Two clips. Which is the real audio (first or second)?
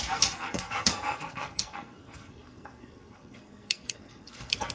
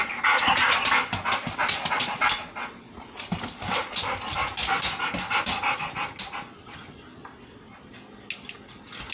second